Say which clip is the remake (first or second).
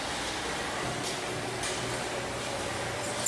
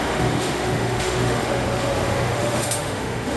second